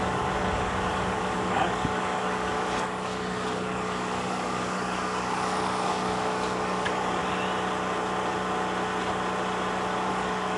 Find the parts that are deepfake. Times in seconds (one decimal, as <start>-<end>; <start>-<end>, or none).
0.0-7.2; 10.1-10.6